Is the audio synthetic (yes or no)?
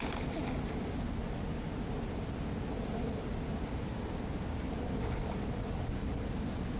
no